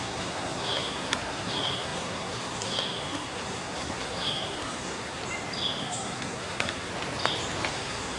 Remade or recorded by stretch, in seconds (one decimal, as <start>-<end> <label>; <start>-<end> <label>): 0.0-5.2 remade; 5.2-5.8 recorded; 5.8-6.9 remade; 6.9-7.7 recorded; 7.7-8.2 remade